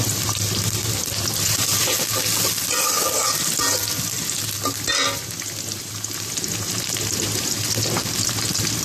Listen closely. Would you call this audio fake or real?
real